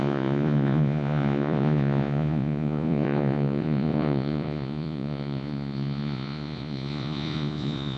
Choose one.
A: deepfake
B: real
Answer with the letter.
A